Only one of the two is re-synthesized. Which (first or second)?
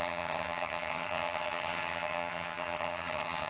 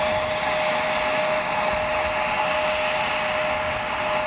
first